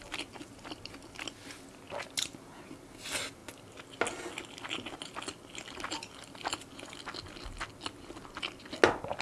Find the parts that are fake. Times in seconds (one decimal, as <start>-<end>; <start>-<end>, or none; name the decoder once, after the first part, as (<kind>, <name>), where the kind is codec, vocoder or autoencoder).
none